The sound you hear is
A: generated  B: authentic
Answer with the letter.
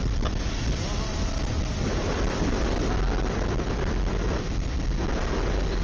B